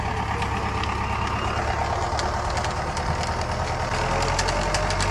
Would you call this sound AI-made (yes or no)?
no